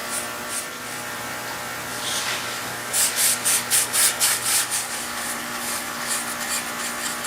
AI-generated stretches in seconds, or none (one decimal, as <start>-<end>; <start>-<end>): 1.9-6.1